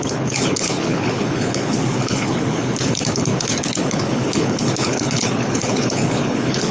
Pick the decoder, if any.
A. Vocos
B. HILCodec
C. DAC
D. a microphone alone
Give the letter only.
B